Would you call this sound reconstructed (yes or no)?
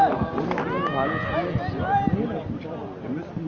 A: no